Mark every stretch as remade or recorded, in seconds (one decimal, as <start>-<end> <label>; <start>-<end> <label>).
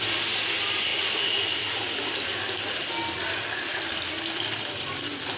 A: 0.0-0.9 recorded; 0.9-2.8 remade; 2.8-5.4 recorded